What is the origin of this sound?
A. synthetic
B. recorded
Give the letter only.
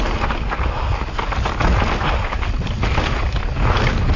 B